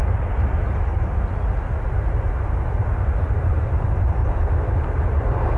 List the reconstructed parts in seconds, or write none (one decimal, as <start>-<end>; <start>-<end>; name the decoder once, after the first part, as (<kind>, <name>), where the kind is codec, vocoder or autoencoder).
3.4-4.2 (vocoder, BigVGAN v2); 4.7-5.6